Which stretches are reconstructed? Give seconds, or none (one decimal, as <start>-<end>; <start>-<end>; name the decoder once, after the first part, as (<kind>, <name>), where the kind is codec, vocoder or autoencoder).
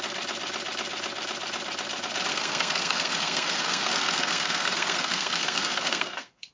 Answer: 2.3-6.5 (codec, SNAC)